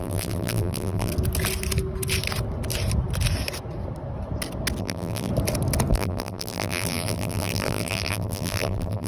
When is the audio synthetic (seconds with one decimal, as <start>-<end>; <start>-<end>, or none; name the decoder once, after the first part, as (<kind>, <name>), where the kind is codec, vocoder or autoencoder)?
0.0-1.1 (vocoder, BigVGAN v2); 4.8-5.3; 5.9-9.1